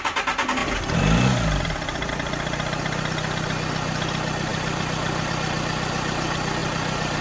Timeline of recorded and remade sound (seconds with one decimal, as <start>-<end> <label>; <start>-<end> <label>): 0.0-6.6 recorded; 6.6-7.2 remade